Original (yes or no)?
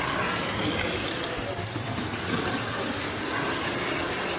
yes